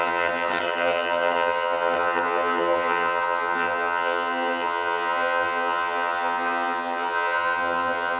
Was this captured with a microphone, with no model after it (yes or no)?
no